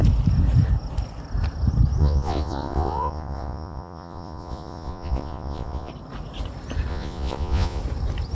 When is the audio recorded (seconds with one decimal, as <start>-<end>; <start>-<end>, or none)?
0.0-2.0; 5.9-6.9; 7.8-8.3